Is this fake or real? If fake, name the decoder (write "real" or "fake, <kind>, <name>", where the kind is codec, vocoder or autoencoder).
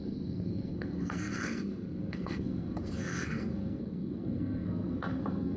fake, codec, SNAC